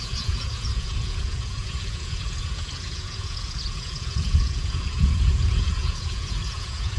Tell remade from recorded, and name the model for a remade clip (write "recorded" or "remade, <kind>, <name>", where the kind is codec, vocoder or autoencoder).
remade, vocoder, Vocos